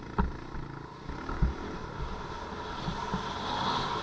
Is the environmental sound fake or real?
real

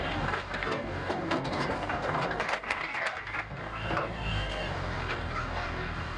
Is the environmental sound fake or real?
fake